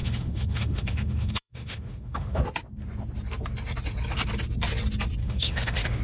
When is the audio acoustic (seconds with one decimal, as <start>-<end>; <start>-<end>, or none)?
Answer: 2.4-5.2